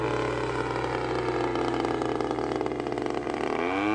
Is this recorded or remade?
recorded